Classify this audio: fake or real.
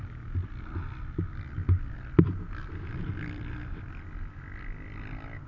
real